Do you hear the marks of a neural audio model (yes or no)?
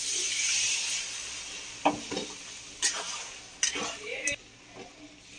no